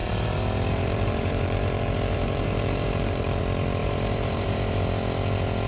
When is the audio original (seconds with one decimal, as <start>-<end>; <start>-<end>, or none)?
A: 3.4-3.8; 4.8-5.7